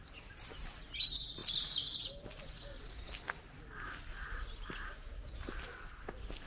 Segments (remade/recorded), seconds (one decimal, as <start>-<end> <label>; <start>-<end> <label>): 0.0-6.5 recorded